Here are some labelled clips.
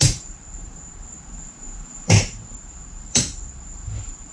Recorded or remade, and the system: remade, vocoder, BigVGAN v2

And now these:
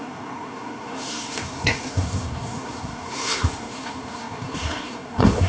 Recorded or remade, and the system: remade, codec, SNAC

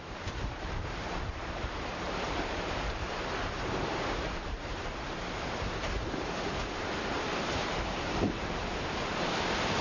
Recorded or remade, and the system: remade, vocoder, BigVGAN v2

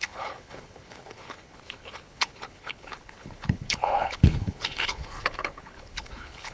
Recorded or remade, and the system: remade, codec, HILCodec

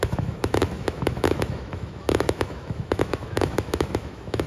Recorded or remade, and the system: remade, autoencoder, DAC-VAE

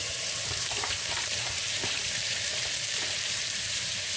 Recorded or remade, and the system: remade, vocoder, BigVGAN v2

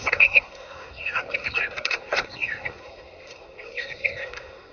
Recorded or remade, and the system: remade, codec, SNAC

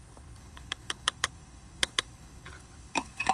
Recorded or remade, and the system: remade, codec, HILCodec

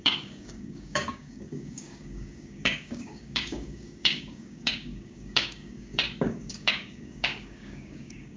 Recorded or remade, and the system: remade, codec, DAC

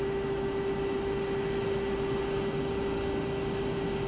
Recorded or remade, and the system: recorded